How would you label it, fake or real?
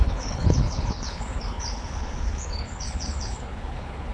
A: fake